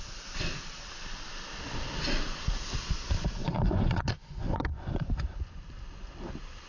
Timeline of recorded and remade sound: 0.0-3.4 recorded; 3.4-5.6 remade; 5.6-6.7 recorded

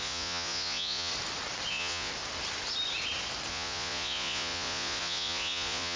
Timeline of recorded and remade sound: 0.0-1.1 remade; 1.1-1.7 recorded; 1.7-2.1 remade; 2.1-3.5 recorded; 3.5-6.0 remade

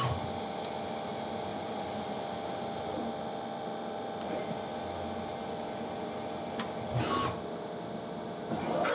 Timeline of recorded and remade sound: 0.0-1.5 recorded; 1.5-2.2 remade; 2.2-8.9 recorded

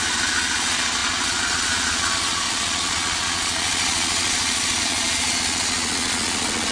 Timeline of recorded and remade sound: 0.0-6.7 remade